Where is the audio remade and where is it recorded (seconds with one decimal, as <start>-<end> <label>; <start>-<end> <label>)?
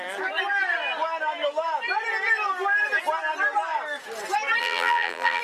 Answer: 0.0-4.6 recorded; 4.6-5.4 remade